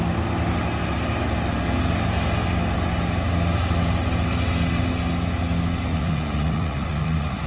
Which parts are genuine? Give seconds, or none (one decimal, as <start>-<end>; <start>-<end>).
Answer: 0.0-5.9

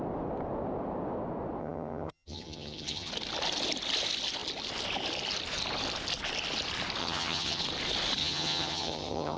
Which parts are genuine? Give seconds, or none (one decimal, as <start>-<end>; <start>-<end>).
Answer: 0.0-1.6; 3.1-7.0; 7.6-8.2